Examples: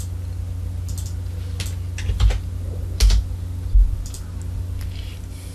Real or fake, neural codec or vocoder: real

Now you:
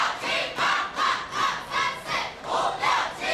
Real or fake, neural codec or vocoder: real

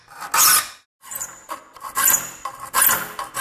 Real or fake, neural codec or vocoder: real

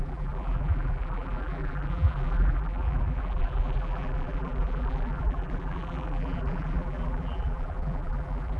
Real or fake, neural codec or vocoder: fake, vocoder, BigVGAN v2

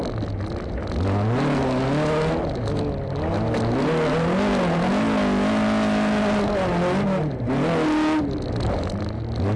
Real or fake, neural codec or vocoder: real